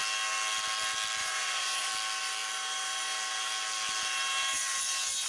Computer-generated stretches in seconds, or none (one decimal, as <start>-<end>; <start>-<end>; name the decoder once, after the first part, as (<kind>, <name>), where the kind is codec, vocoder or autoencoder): 1.2-1.9 (vocoder, Vocos)